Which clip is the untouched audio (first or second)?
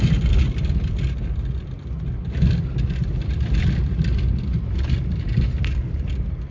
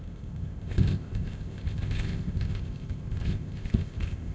first